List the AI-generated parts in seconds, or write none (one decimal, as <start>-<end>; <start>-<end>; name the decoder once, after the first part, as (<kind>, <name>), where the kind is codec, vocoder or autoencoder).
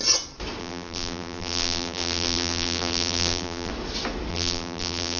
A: 0.6-3.7 (vocoder, BigVGAN v2); 4.3-5.2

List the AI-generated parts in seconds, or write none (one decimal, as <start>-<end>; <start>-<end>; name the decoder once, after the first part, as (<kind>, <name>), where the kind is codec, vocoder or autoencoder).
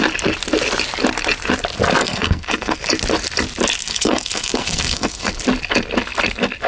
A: 2.0-2.8 (codec, SNAC); 3.8-5.3